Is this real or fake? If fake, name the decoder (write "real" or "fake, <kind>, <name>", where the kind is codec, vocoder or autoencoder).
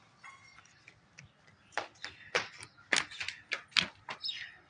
real